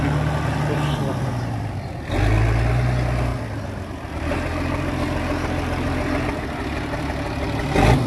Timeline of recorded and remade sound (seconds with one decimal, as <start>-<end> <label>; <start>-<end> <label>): 0.0-8.1 recorded